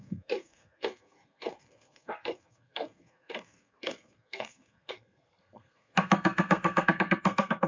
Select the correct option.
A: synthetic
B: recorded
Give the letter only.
A